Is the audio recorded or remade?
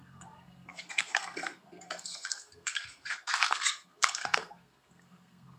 remade